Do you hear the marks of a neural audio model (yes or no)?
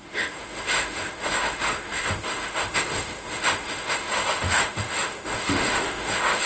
yes